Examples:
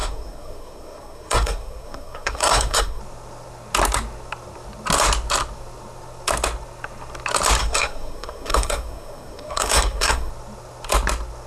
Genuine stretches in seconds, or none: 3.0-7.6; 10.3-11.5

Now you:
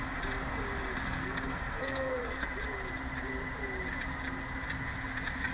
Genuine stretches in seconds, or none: 0.0-0.9; 2.5-5.5